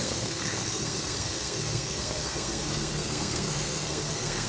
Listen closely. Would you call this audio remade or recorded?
remade